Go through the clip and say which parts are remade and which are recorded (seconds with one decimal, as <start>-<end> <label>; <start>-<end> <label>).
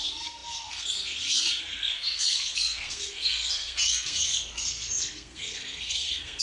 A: 0.0-6.4 remade